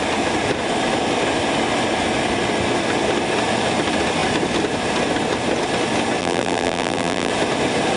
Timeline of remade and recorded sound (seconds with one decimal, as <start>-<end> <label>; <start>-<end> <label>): 0.0-6.2 recorded; 6.2-7.3 remade; 7.3-8.0 recorded